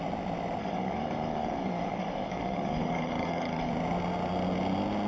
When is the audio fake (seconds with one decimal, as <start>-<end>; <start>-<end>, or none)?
0.6-3.7